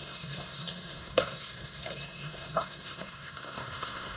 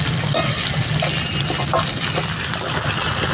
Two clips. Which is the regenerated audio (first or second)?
first